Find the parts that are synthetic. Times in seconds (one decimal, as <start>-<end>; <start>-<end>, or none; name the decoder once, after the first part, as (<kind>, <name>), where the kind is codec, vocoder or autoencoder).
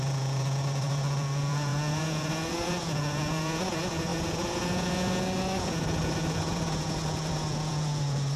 0.0-8.4 (vocoder, Vocos)